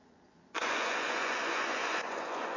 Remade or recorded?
remade